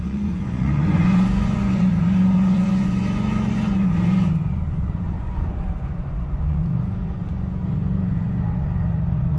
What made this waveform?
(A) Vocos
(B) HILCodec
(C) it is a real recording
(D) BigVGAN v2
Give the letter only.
A